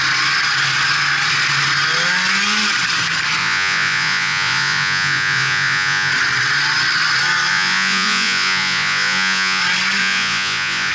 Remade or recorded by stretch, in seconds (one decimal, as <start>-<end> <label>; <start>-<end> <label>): 0.0-3.4 recorded; 3.4-6.1 remade; 6.1-7.5 recorded; 7.5-9.6 remade; 9.6-10.0 recorded; 10.0-10.9 remade